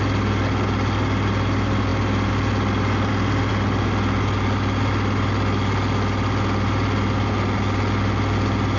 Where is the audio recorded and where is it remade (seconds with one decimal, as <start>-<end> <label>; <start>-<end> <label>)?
0.0-8.8 recorded